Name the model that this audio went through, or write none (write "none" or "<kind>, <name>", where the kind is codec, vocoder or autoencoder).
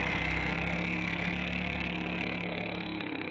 codec, SNAC